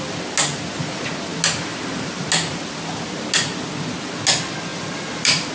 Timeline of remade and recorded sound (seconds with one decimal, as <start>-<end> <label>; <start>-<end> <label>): 0.0-4.7 recorded; 4.7-5.5 remade